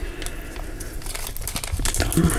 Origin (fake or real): real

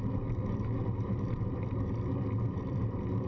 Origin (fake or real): real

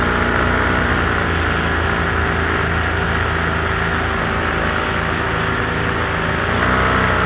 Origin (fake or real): real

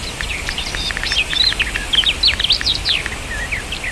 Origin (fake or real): fake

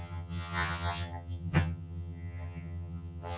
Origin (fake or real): fake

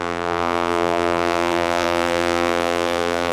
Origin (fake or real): fake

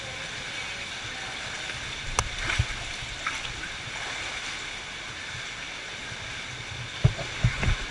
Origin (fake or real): real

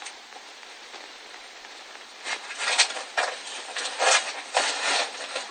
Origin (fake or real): fake